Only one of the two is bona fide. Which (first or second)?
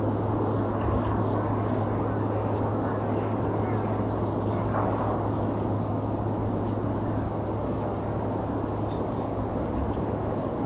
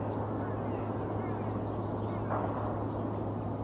second